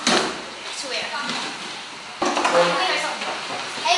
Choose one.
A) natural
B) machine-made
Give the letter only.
A